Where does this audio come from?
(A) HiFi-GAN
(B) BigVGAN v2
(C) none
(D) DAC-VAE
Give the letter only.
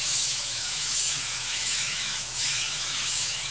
D